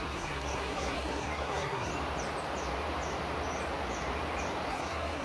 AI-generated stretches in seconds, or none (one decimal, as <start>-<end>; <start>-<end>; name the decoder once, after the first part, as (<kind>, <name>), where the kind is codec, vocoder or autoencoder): 0.0-1.9 (codec, SNAC); 4.7-5.2